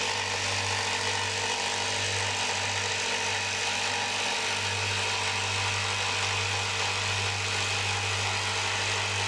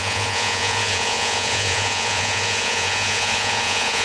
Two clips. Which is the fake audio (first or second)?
second